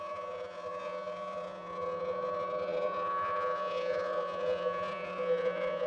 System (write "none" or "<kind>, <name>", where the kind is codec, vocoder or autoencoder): vocoder, Vocos